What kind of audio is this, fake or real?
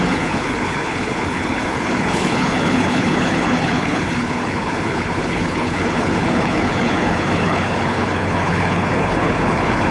fake